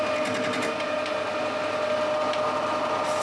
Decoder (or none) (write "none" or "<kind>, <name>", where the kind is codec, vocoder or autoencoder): none